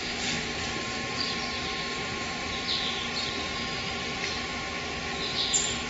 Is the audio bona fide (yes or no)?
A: no